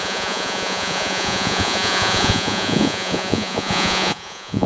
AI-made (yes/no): yes